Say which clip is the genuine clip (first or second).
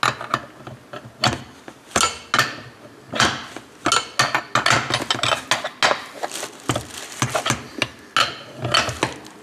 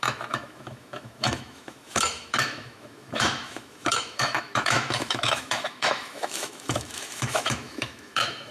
first